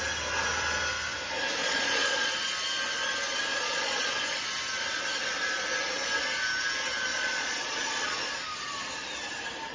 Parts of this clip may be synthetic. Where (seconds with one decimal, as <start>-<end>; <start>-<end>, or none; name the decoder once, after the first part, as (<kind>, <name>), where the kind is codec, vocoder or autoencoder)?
1.6-2.3 (vocoder, Vocos); 3.5-4.2; 7.1-8.3